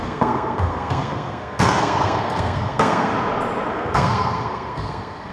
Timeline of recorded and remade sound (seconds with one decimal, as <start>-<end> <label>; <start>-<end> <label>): 0.0-3.1 remade; 3.1-3.7 recorded; 3.7-5.3 remade

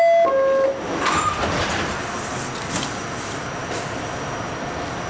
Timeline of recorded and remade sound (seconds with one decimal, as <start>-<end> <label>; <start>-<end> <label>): 0.0-5.1 recorded